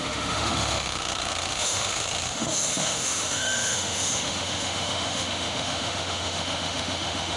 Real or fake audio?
fake